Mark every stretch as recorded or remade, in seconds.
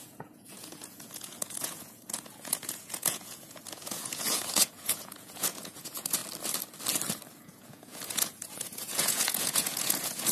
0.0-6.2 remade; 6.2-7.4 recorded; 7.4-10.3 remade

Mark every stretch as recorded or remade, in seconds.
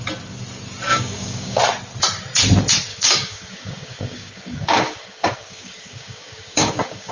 0.0-0.9 recorded; 0.9-1.6 remade; 1.6-2.9 recorded; 2.9-7.1 remade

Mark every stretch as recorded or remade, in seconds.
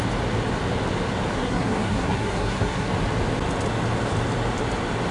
0.0-1.3 recorded; 1.3-2.9 remade; 2.9-5.1 recorded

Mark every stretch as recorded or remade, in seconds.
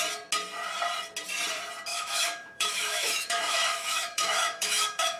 0.0-1.9 recorded; 1.9-5.2 remade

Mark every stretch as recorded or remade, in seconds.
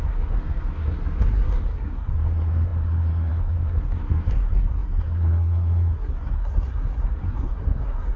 0.0-8.2 remade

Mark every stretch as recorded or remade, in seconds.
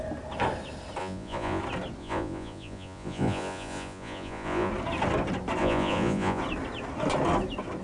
0.0-1.0 recorded; 1.0-1.6 remade; 1.6-2.0 recorded; 2.0-4.7 remade; 4.7-5.6 recorded; 5.6-6.4 remade; 6.4-7.8 recorded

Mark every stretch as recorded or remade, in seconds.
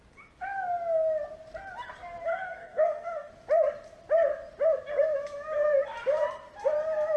0.0-2.3 recorded; 2.3-3.3 remade; 3.3-7.2 recorded